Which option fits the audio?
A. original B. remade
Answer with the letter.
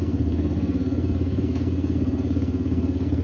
B